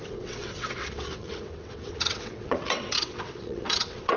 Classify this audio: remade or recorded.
remade